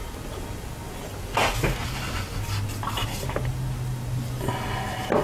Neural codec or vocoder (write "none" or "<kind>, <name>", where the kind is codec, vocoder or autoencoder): none